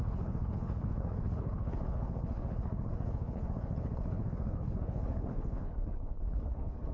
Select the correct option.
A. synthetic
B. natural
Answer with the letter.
A